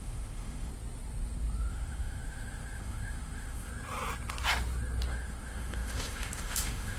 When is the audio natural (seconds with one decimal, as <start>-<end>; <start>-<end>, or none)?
0.7-1.7; 3.7-5.1